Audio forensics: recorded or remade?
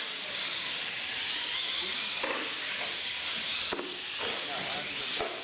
recorded